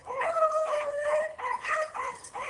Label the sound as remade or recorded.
remade